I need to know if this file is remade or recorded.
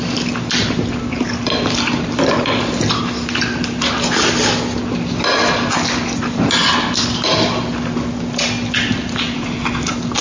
recorded